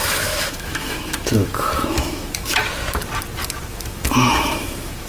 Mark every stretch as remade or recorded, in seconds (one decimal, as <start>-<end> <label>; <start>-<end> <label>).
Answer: 0.0-2.6 remade; 2.6-3.7 recorded; 3.7-5.1 remade